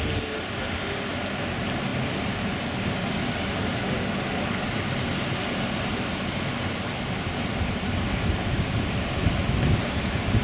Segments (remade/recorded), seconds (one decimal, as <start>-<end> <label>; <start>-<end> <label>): 0.0-10.4 recorded